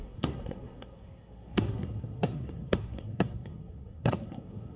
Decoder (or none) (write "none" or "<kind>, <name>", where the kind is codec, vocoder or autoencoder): codec, SNAC